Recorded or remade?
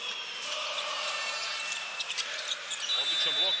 recorded